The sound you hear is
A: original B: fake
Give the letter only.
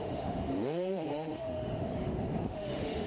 B